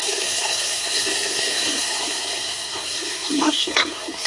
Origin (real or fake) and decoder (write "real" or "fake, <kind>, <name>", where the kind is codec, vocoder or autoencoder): fake, codec, SNAC